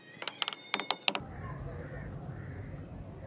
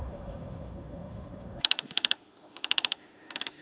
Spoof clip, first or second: second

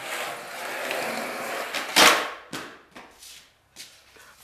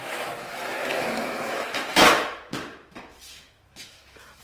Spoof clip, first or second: second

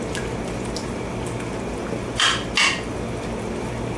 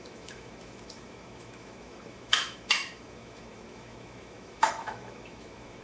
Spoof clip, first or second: second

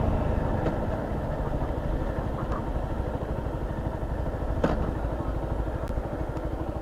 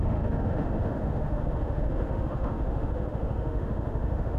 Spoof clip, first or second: second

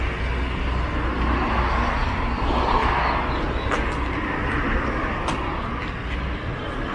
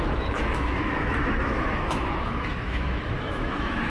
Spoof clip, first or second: second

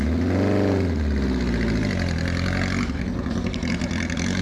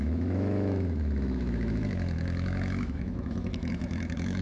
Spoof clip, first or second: second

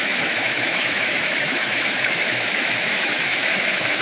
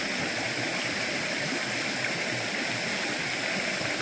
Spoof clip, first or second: first